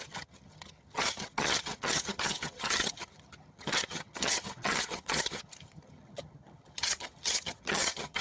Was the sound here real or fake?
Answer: fake